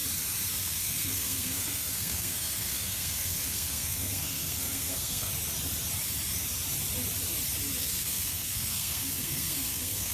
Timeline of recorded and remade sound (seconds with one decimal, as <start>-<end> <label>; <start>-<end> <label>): 0.0-0.6 recorded; 0.6-5.3 remade; 5.3-7.8 recorded; 7.8-10.1 remade